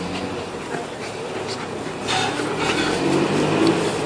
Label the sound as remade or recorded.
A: recorded